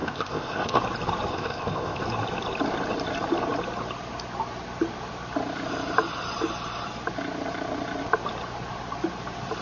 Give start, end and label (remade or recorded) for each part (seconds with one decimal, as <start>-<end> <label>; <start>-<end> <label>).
0.0-0.8 remade; 0.8-1.3 recorded; 1.3-2.0 remade; 2.0-9.6 recorded